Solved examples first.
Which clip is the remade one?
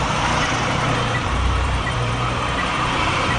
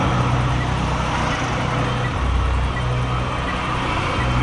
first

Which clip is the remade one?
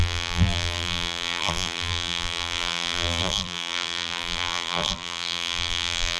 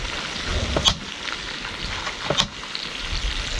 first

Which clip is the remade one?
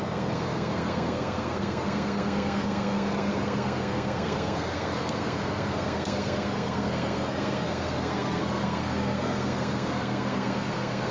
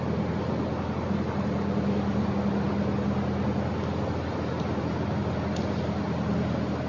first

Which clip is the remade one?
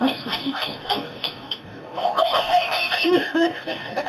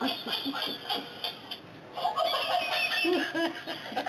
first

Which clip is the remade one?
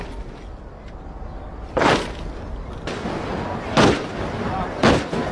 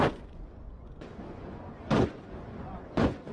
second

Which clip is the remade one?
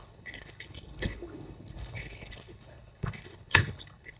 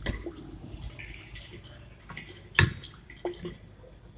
first